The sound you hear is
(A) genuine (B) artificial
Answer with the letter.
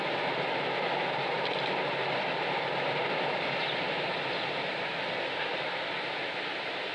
A